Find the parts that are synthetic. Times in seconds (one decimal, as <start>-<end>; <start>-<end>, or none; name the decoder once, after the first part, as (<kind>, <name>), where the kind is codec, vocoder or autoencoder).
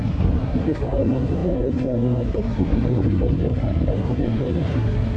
0.0-5.2 (codec, SNAC)